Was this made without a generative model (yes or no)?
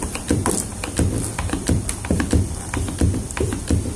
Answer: no